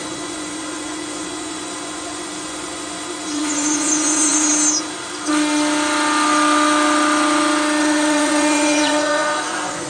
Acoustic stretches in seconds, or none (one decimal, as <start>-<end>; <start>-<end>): 4.5-7.8